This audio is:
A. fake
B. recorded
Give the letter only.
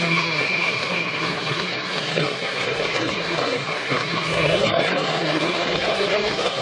A